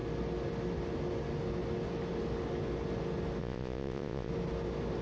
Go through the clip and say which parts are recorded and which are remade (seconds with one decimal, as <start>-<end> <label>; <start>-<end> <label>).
0.0-3.4 recorded; 3.4-4.3 remade; 4.3-5.0 recorded